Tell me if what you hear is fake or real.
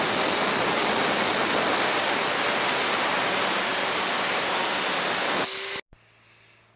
real